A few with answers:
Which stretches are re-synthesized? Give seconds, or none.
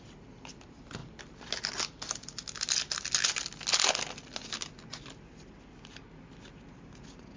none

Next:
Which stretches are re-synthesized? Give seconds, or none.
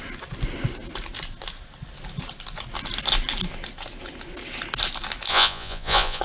5.3-6.2 (vocoder, Vocos)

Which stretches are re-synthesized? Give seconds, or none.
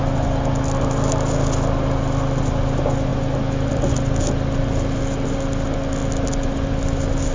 none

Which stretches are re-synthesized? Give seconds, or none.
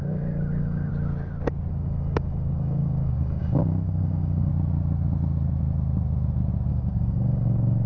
0.0-0.9 (codec, DAC); 1.7-4.5; 6.7-7.9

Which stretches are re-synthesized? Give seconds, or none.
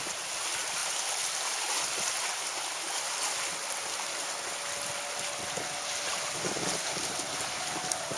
none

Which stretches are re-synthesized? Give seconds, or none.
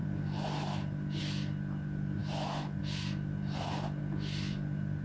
none